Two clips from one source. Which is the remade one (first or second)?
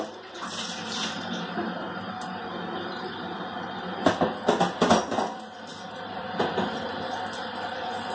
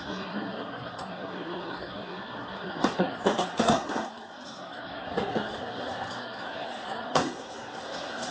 second